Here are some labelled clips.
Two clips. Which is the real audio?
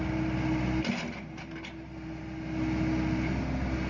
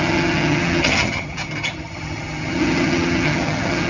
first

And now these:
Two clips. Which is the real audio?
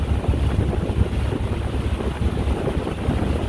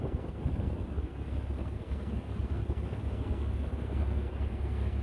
first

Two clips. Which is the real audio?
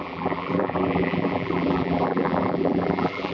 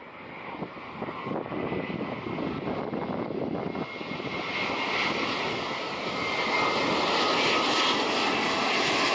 second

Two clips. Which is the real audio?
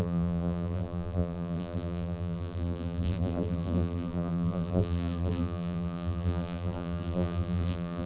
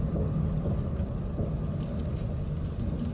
second